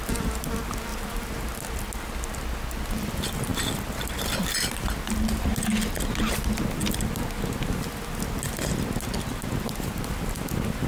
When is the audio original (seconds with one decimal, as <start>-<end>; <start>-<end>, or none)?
0.0-0.9; 1.5-10.9